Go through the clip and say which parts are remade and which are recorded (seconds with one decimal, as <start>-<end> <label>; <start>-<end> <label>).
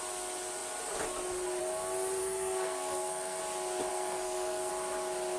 0.0-2.2 recorded; 2.2-3.4 remade; 3.4-3.9 recorded; 3.9-4.7 remade; 4.7-5.4 recorded